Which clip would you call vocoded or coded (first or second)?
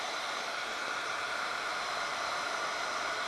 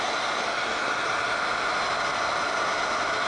first